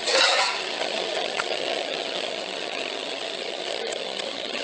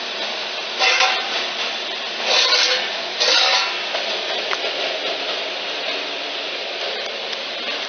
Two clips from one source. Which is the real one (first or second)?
second